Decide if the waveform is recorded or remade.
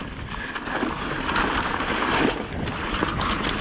recorded